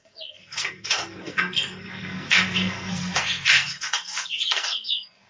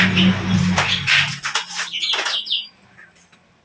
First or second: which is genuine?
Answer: second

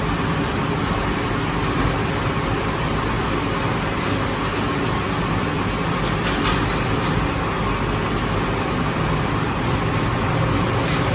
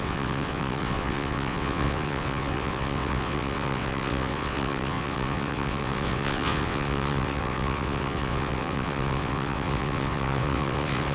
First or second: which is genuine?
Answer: first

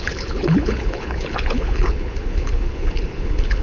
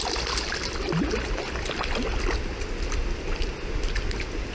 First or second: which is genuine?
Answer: second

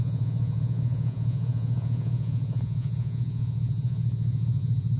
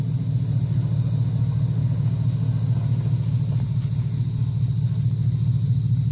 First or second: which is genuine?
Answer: second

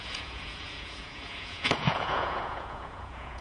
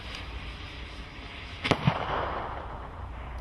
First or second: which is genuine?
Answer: second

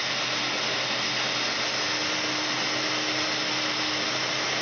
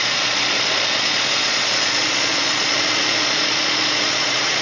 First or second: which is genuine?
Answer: first